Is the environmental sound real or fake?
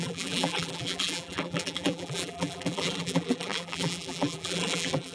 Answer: fake